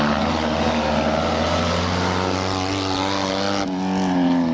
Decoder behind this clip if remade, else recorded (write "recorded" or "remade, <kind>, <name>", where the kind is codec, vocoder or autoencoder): recorded